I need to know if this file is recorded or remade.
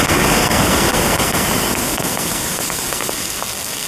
remade